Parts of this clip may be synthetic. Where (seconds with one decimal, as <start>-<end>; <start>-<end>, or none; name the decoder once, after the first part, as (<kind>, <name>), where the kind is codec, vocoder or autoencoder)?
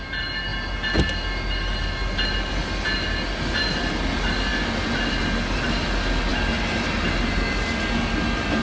none